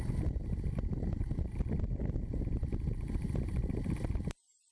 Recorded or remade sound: recorded